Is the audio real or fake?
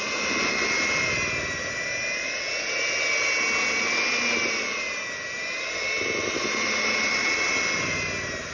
real